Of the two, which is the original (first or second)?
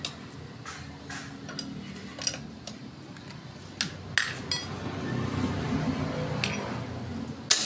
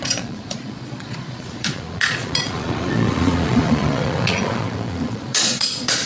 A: first